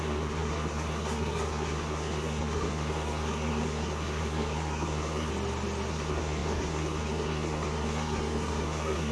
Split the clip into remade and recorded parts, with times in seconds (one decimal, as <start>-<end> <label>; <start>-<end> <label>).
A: 0.0-5.3 remade; 5.3-5.9 recorded; 5.9-9.1 remade